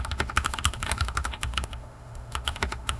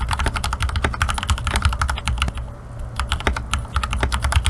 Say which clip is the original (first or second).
second